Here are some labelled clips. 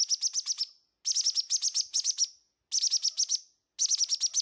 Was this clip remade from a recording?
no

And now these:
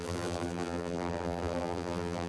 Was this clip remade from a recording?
yes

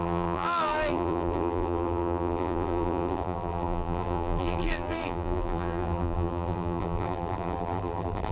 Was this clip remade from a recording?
yes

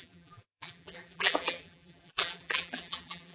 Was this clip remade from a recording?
yes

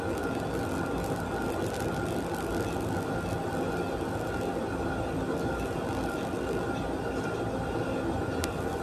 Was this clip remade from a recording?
no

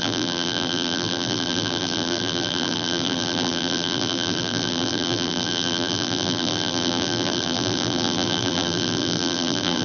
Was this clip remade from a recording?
yes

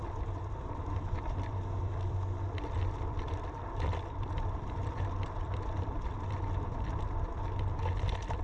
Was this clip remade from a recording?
yes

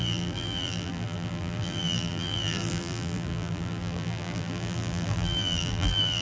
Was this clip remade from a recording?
yes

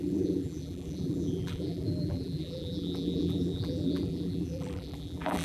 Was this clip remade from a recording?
yes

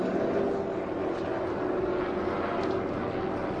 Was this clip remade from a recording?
no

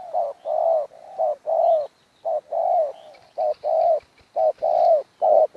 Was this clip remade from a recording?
no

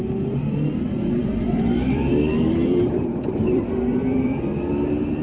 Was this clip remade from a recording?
yes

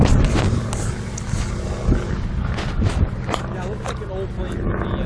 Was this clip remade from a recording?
no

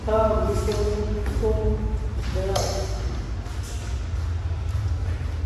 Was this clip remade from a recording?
no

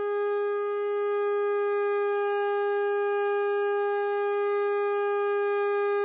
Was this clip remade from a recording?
no